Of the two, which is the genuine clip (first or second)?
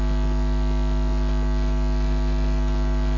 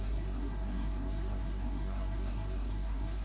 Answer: first